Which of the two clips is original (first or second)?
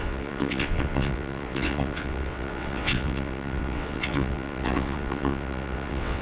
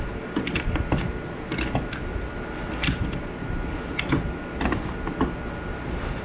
second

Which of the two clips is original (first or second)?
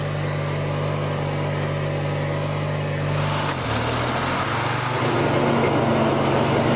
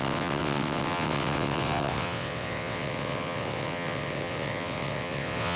first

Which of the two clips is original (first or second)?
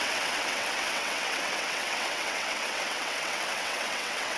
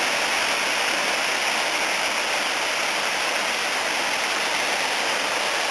second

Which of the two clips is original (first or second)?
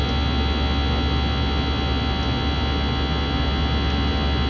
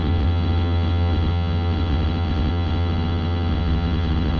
first